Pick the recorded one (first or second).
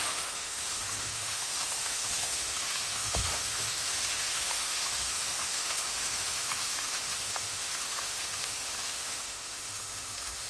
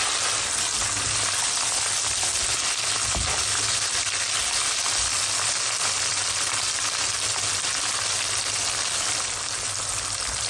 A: second